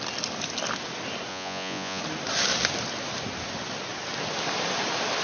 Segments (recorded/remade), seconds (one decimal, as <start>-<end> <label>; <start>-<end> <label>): 0.0-1.3 recorded; 1.3-2.0 remade; 2.0-5.2 recorded